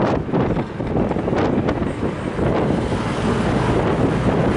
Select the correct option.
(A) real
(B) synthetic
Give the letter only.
A